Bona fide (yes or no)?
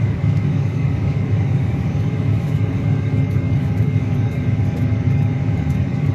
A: no